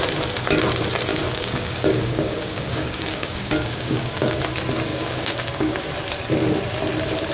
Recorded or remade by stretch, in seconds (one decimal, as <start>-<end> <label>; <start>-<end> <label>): 0.0-1.1 recorded; 1.1-4.4 remade; 4.4-4.9 recorded; 4.9-5.8 remade; 5.8-7.3 recorded